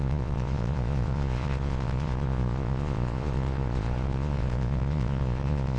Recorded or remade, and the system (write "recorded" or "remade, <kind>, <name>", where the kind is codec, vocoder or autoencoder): remade, vocoder, Vocos